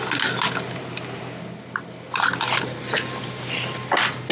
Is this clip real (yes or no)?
yes